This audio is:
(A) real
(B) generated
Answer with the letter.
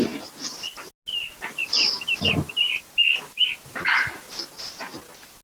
A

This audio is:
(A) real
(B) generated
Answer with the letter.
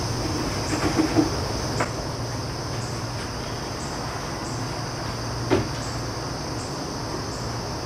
A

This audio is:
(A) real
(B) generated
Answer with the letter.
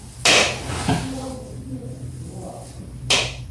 A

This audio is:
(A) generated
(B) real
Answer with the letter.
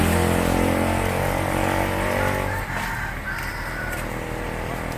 B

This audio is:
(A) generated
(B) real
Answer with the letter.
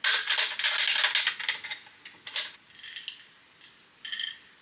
B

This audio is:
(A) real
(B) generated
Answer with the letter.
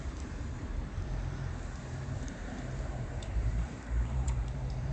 B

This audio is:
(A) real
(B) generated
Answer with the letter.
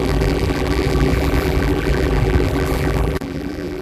B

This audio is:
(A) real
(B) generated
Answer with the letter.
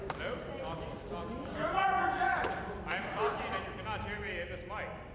A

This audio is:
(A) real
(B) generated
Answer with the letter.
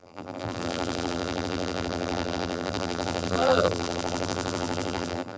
B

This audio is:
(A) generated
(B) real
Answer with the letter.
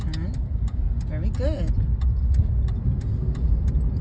B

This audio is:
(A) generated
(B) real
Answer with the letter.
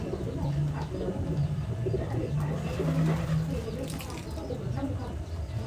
B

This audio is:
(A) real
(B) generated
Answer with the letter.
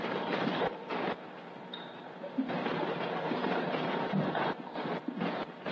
B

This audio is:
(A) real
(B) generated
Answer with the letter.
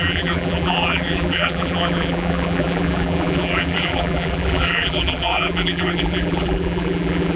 B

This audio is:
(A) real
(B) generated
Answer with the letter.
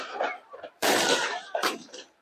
B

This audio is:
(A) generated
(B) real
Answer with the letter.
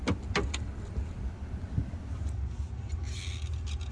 B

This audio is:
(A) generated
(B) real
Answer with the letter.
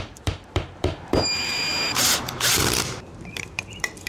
A